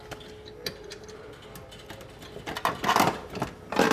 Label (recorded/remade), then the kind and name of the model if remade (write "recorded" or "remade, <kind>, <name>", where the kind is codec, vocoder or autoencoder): recorded